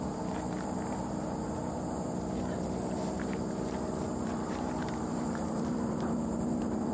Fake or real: real